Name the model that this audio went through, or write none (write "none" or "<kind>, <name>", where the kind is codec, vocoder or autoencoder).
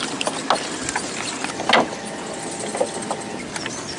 none